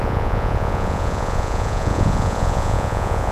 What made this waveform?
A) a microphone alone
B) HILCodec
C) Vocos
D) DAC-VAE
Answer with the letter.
C